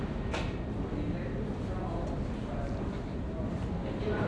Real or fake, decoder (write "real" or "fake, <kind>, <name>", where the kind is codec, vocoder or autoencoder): real